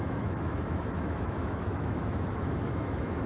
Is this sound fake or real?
fake